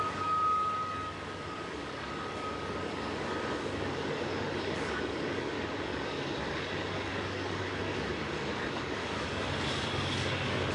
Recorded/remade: remade